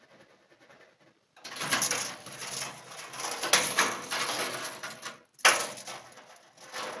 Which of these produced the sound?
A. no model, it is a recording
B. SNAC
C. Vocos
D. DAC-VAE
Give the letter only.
A